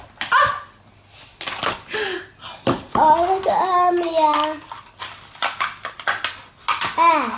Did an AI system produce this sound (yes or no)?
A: no